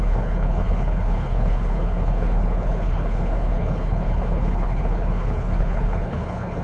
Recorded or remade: remade